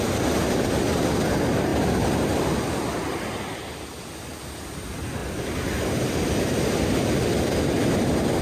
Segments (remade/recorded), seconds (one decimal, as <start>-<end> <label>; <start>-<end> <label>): 0.0-8.4 recorded